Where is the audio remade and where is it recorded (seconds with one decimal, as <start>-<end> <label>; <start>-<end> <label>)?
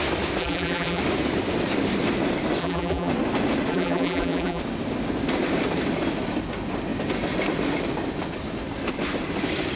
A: 0.0-0.4 recorded; 0.4-1.0 remade; 1.0-2.6 recorded; 2.6-3.1 remade; 3.1-3.7 recorded; 3.7-4.6 remade; 4.6-9.8 recorded